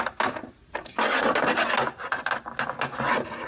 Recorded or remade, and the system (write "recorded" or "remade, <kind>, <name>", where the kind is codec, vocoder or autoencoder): recorded